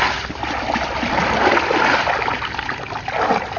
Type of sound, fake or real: real